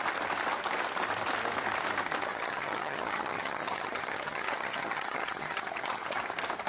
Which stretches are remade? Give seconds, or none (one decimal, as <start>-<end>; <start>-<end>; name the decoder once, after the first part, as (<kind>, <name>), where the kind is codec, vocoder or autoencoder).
2.2-6.2 (vocoder, HiFi-GAN)